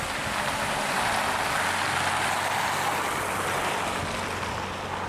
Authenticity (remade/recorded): recorded